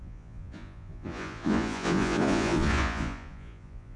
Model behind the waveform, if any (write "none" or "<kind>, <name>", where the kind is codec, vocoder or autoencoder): vocoder, Vocos